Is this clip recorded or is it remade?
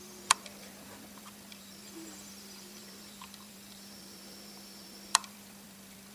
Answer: remade